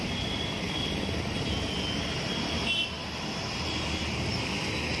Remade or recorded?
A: recorded